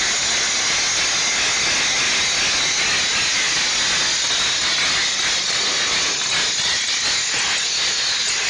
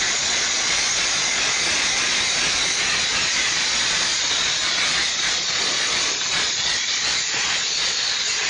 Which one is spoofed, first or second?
second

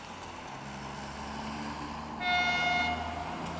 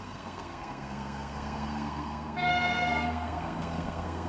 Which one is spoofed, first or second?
second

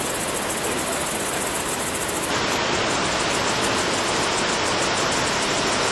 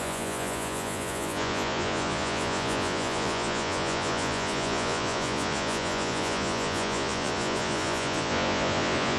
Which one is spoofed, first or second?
second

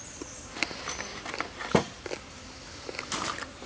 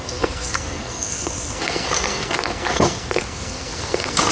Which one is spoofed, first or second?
second